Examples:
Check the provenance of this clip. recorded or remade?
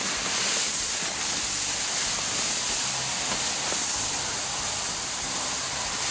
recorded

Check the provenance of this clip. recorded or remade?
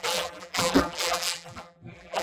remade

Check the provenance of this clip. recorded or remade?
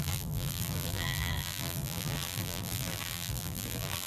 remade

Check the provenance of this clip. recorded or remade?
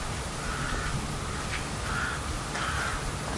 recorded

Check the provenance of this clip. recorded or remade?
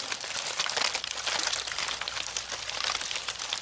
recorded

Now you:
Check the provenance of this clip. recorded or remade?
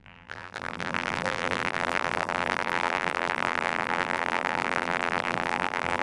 remade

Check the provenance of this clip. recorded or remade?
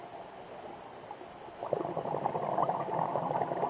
recorded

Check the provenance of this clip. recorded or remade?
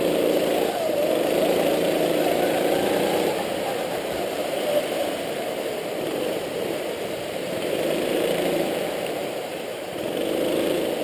remade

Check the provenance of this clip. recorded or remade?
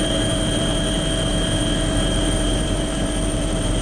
remade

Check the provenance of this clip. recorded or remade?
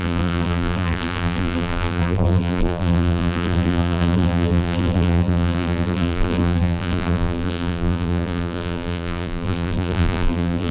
remade